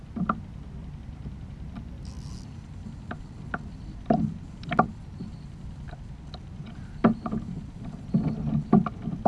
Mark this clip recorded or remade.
recorded